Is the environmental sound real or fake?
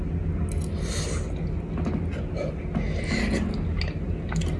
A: real